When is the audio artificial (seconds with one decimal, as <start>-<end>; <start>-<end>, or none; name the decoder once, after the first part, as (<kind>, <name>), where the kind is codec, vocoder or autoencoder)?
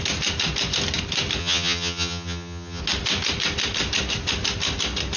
1.4-2.8 (vocoder, HiFi-GAN)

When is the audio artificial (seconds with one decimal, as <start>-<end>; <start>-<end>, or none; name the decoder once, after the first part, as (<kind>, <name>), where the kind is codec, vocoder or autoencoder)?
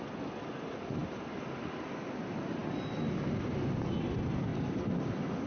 none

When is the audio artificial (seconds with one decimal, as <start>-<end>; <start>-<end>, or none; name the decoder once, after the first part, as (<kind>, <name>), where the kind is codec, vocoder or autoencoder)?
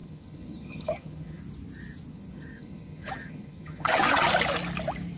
0.0-1.4 (vocoder, HiFi-GAN); 2.1-4.3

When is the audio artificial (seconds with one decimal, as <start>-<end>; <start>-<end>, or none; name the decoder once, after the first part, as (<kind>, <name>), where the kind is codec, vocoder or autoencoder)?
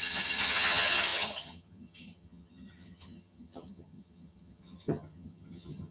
0.0-5.9 (vocoder, HiFi-GAN)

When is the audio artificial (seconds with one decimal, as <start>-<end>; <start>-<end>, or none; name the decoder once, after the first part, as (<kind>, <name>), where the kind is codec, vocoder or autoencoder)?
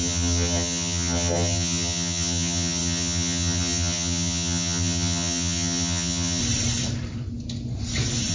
0.0-6.4 (vocoder, HiFi-GAN)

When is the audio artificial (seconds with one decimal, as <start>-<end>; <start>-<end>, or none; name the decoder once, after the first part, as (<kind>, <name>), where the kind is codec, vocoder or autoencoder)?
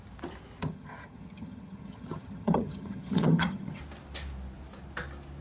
0.6-3.8 (vocoder, HiFi-GAN)